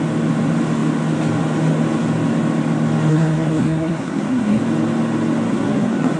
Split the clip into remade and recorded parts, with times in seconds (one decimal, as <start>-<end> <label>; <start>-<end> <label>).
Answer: 0.0-3.1 recorded; 3.1-4.6 remade; 4.6-5.5 recorded; 5.5-6.2 remade